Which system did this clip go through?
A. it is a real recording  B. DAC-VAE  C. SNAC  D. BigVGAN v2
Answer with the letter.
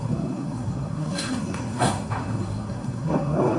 C